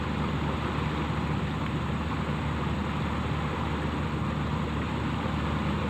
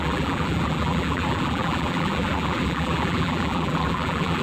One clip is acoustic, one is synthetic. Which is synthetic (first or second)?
second